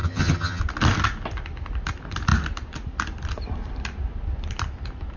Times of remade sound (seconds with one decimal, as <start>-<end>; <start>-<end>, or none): 0.0-0.6